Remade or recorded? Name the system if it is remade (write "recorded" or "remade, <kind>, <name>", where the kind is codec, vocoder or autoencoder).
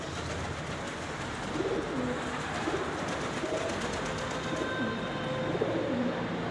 recorded